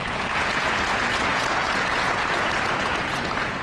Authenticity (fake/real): fake